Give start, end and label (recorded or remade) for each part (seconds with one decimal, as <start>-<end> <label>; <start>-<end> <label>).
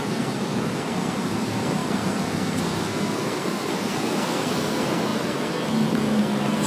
0.0-6.7 remade